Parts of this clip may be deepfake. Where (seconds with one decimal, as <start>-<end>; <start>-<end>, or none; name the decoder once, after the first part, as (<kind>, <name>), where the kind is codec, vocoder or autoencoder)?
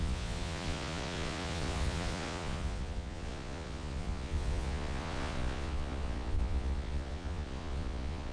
0.0-8.3 (vocoder, Vocos)